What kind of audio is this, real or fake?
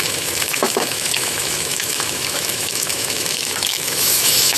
fake